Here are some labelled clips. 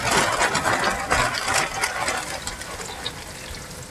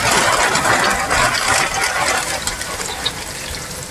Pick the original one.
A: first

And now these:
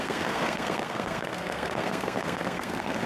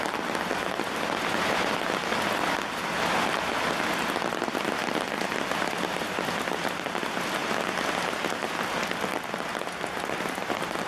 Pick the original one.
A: second